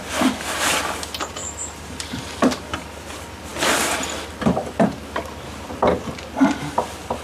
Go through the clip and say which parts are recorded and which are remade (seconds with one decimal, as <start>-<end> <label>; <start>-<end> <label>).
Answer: 0.0-1.4 recorded; 1.4-2.2 remade; 2.2-7.2 recorded